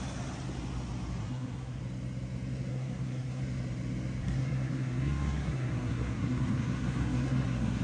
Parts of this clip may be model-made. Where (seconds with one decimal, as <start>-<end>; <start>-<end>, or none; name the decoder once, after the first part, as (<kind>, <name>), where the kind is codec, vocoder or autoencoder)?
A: 1.2-1.8 (codec, SNAC); 2.7-3.4; 4.2-7.8